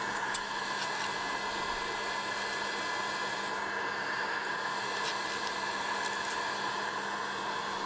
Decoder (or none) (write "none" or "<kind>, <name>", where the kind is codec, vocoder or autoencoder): none